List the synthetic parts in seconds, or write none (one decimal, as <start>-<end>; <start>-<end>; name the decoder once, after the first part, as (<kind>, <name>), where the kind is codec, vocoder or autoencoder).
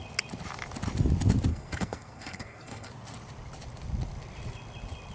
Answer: 1.5-2.9 (codec, SNAC)